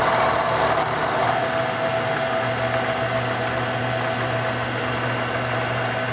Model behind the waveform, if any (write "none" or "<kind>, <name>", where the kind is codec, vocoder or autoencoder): none